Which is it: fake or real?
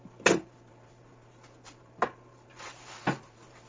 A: real